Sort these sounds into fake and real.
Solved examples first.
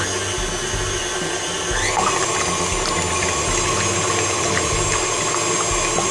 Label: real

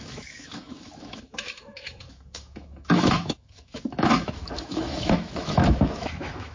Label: fake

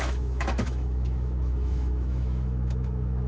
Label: fake